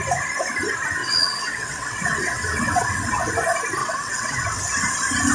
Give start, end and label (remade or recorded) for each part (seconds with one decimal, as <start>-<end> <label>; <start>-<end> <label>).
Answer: 0.0-1.0 recorded; 1.0-3.3 remade; 3.3-3.8 recorded; 3.8-4.6 remade; 4.6-5.3 recorded